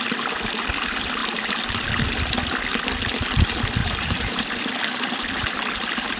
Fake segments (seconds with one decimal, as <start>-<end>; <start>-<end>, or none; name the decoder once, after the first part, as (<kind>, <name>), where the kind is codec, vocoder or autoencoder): 3.8-4.4 (vocoder, BigVGAN v2)